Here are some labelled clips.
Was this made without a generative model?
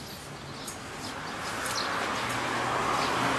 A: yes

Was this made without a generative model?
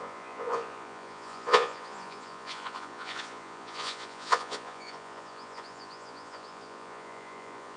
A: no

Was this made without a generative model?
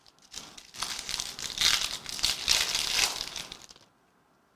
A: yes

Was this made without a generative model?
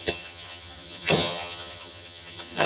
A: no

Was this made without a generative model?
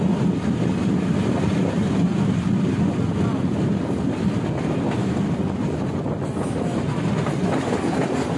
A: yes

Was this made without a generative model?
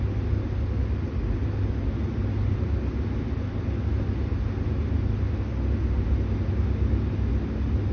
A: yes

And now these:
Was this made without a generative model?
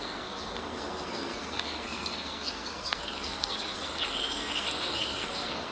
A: no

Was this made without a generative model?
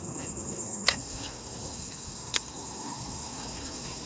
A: no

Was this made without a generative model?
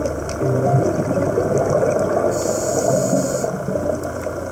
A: yes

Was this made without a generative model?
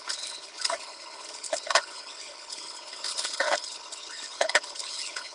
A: no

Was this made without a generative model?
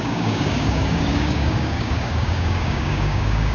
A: no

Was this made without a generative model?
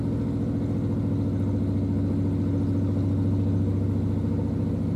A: yes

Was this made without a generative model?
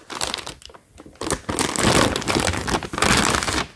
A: yes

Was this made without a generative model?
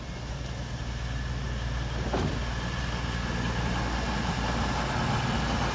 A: yes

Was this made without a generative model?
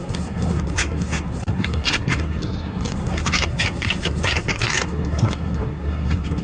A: no